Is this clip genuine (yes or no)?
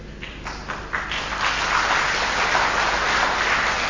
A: yes